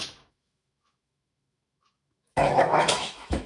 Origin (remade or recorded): remade